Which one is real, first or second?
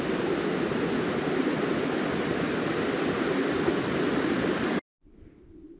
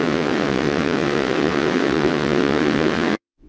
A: first